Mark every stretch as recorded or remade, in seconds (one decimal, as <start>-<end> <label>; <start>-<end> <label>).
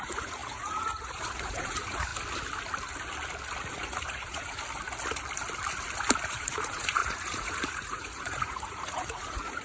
0.0-2.1 remade; 2.1-3.7 recorded; 3.7-4.6 remade; 4.6-6.3 recorded; 6.3-9.6 remade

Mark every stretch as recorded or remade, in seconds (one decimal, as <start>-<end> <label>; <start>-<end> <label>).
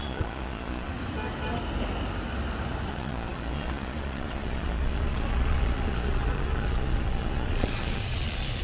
0.0-0.9 remade; 0.9-2.9 recorded; 2.9-8.6 remade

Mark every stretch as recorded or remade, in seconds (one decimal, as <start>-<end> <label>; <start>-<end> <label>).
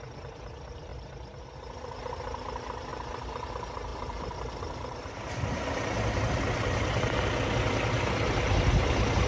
0.0-9.3 recorded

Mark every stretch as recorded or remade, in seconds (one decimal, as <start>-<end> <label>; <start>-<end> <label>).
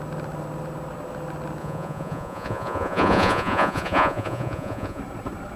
0.0-1.6 recorded; 1.6-5.0 remade; 5.0-5.6 recorded